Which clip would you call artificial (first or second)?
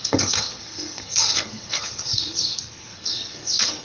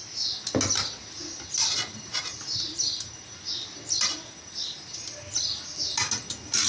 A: first